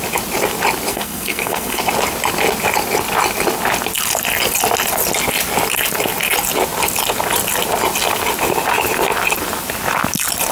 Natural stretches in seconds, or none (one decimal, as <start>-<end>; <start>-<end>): 0.0-0.9; 1.8-10.5